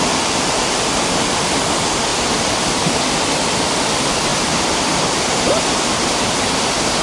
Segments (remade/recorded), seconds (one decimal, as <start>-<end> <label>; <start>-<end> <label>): 0.0-2.1 recorded; 2.1-2.8 remade; 2.8-4.3 recorded; 4.3-4.9 remade; 4.9-7.0 recorded